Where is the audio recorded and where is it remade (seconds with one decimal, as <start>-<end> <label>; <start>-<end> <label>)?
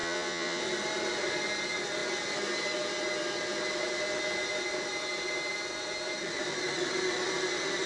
0.0-0.6 remade; 0.6-7.9 recorded